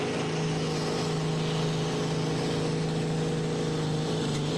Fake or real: real